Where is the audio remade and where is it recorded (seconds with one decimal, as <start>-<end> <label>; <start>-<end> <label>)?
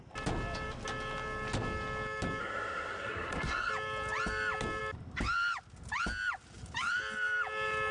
0.0-2.4 recorded; 2.4-3.7 remade; 3.7-7.9 recorded